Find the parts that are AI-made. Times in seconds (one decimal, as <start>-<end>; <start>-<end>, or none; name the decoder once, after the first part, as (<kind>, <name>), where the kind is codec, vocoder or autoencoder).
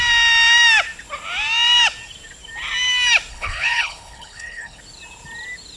3.3-4.8 (codec, HILCodec)